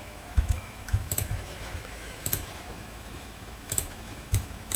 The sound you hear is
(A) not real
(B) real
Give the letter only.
A